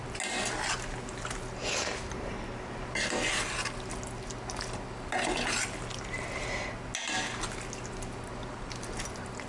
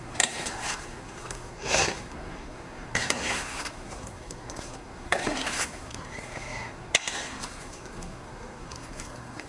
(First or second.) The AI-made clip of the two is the second